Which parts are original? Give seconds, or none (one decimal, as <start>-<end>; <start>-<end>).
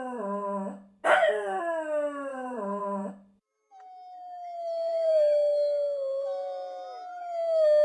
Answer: 0.0-2.3; 3.1-7.8